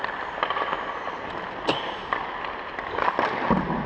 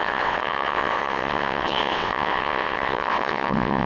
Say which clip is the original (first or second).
first